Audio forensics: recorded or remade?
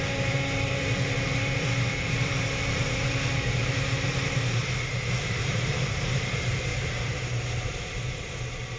remade